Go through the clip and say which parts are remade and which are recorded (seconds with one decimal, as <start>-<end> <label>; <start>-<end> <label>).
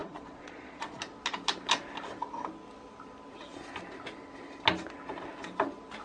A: 0.0-1.0 remade; 1.0-6.0 recorded